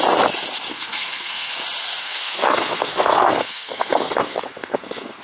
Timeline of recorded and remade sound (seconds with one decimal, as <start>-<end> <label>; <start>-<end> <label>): 0.0-0.7 recorded; 0.7-1.5 remade; 1.5-2.0 recorded; 2.0-5.2 remade